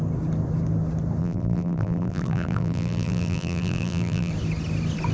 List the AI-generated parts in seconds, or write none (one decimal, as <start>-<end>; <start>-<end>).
1.2-4.3